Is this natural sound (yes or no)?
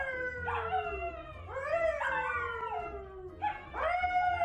yes